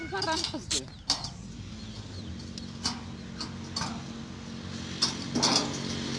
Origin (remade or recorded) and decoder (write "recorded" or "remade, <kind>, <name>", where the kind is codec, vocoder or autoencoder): recorded